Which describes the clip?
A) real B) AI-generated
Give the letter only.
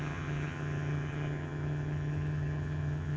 B